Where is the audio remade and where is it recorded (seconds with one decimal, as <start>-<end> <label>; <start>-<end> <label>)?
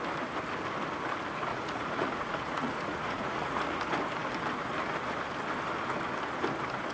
0.0-1.5 recorded; 1.5-3.8 remade; 3.8-6.9 recorded